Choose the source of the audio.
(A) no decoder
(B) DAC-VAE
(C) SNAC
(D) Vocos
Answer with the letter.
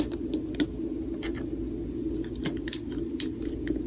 A